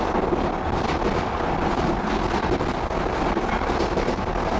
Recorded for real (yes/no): yes